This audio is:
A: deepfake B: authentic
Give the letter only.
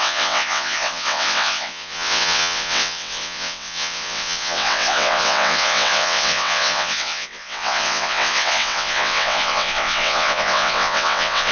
A